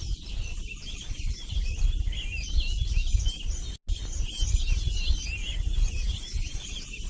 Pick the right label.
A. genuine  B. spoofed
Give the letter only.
A